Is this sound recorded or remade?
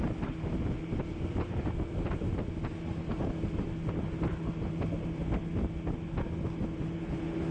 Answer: recorded